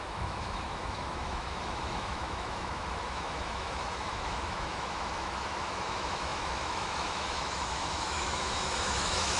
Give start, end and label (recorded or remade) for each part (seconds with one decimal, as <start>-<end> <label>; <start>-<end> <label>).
0.0-9.4 remade

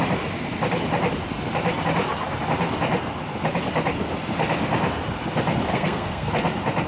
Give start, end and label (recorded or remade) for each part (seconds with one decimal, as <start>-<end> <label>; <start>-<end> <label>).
0.0-5.7 recorded; 5.7-6.3 remade; 6.3-6.9 recorded

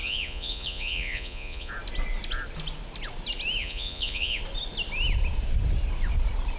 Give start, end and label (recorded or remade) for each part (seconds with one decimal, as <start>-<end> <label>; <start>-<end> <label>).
0.0-1.7 remade; 1.7-3.6 recorded; 3.6-4.4 remade; 4.4-6.6 recorded